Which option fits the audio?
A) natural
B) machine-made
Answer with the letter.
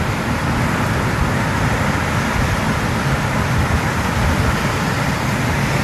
A